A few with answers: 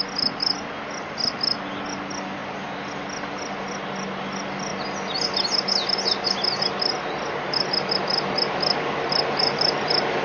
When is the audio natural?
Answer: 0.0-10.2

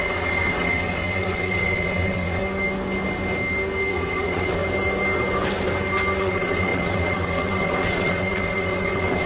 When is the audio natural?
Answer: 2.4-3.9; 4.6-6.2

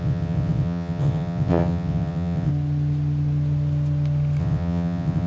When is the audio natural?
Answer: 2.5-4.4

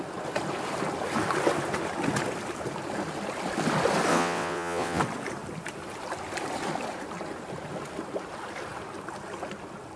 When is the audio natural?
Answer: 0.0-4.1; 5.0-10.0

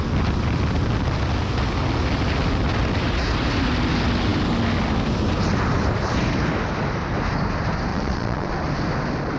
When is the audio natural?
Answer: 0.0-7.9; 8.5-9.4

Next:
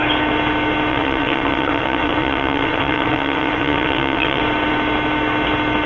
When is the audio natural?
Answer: 0.0-0.9; 4.4-5.9

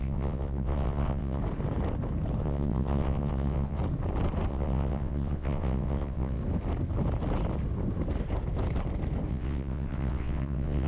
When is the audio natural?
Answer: 1.4-2.4; 3.8-4.5; 6.4-9.3